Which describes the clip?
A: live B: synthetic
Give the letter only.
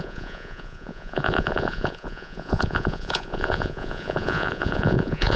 B